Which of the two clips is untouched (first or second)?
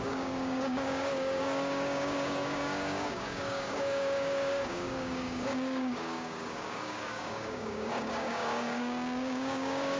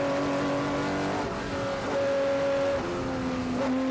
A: second